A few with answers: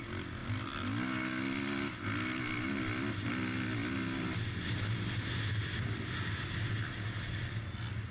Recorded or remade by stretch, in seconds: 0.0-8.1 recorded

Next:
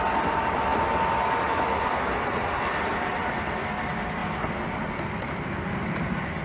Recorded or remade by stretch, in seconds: 0.0-6.4 recorded

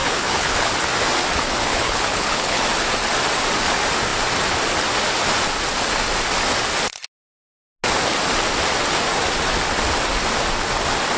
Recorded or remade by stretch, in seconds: 0.0-0.7 remade; 0.7-1.7 recorded; 1.7-2.6 remade; 2.6-11.2 recorded

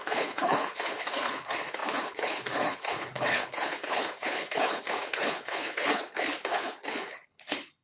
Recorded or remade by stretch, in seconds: 0.0-7.8 remade

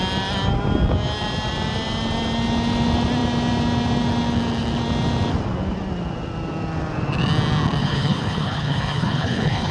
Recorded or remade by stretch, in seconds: 0.0-7.8 recorded; 7.8-9.7 remade